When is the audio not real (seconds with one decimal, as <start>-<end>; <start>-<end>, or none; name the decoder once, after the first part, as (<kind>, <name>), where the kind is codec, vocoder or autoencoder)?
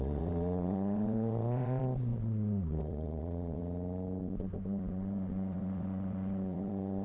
0.0-3.6 (vocoder, WaveNeXt); 4.2-7.0